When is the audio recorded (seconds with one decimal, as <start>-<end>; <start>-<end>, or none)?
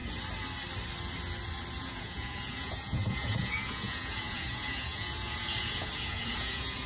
0.0-1.8